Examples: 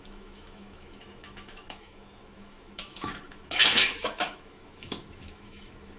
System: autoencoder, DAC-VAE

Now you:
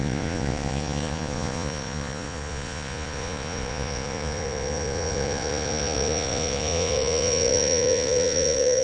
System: vocoder, Vocos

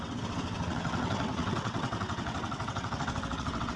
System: vocoder, WaveNeXt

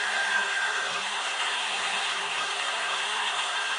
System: codec, SNAC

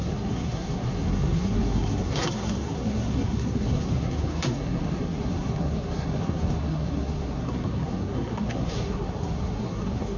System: codec, SNAC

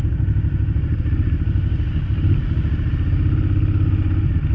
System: none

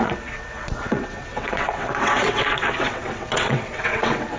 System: vocoder, WaveNeXt